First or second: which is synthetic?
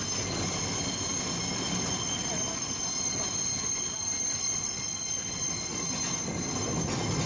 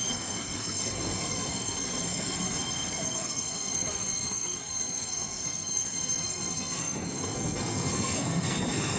second